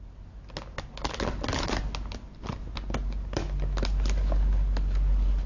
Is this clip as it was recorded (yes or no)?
yes